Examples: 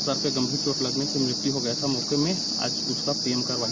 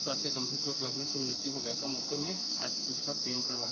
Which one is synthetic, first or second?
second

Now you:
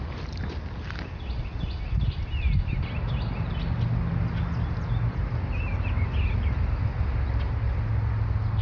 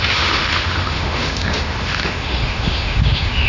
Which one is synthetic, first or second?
second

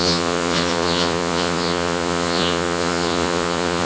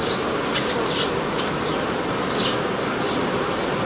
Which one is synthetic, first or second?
first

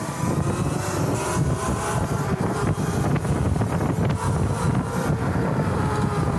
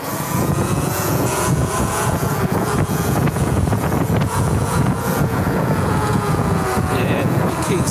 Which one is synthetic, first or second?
second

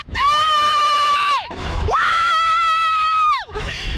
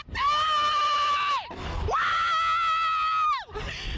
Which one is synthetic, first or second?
first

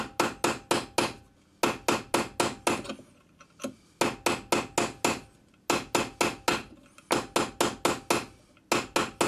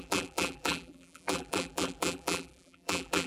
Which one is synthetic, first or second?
second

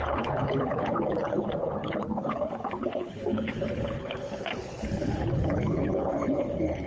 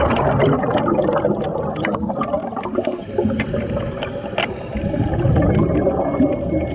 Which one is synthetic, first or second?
first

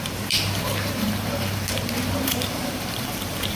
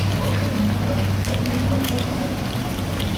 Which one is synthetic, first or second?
first